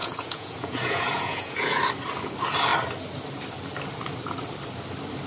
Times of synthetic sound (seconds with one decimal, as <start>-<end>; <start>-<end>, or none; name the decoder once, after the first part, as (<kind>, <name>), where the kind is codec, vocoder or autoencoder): 0.0-1.8 (vocoder, Vocos)

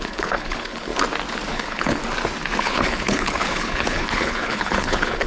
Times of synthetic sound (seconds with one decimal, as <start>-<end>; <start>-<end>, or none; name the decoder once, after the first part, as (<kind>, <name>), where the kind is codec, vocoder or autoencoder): 0.0-0.9 (codec, HILCodec); 1.5-2.0; 2.6-5.3

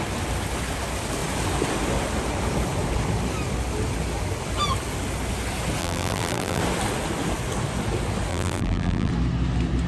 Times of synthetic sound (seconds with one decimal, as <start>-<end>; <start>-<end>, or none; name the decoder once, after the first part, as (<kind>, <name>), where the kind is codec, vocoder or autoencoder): 5.8-6.6 (vocoder, BigVGAN v2); 8.3-9.1